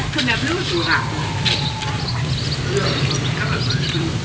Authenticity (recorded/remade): recorded